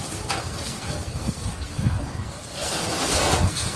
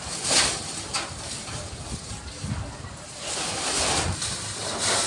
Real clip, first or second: second